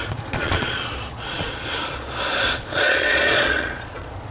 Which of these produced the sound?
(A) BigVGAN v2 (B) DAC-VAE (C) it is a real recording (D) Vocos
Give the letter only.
D